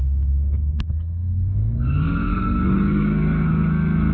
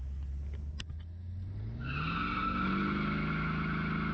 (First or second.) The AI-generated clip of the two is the first